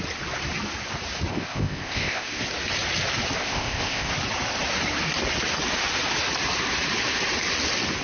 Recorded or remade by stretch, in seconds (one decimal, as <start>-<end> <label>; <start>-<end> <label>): 0.0-1.3 recorded; 1.3-2.4 remade; 2.4-3.4 recorded; 3.4-4.1 remade; 4.1-8.0 recorded